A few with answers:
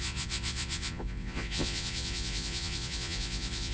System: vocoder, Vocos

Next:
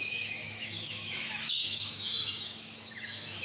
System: autoencoder, DAC-VAE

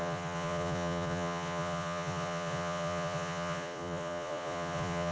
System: vocoder, Vocos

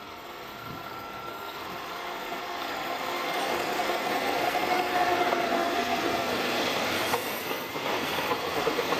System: codec, SNAC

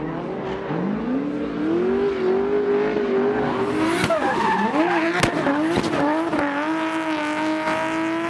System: none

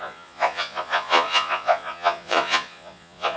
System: vocoder, Vocos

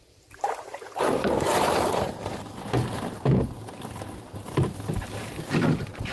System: vocoder, BigVGAN v2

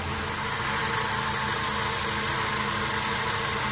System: none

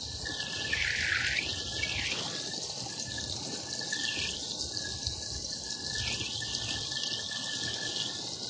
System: none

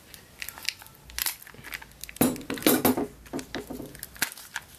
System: none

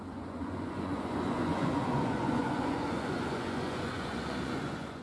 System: vocoder, Vocos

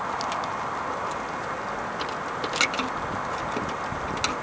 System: none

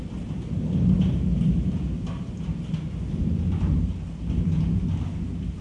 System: none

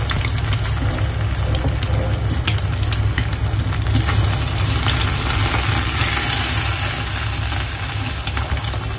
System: none